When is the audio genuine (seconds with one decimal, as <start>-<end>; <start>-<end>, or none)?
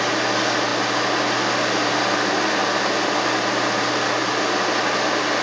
0.0-5.4